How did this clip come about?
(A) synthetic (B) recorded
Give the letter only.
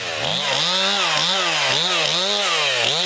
B